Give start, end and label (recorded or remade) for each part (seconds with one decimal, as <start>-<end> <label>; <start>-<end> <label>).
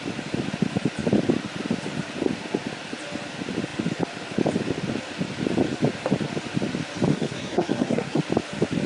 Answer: 0.0-7.1 recorded; 7.1-8.2 remade; 8.2-8.9 recorded